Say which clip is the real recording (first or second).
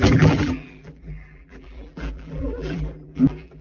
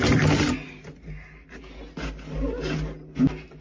second